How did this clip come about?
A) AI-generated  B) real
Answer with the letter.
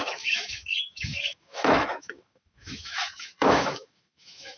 A